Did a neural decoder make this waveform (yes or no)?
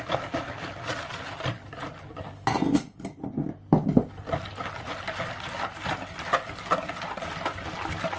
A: no